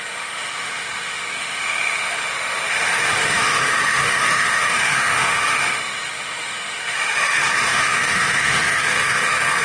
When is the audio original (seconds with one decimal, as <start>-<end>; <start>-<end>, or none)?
none